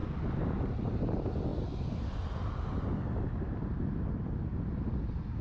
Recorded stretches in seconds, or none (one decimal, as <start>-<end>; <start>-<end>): 0.0-5.4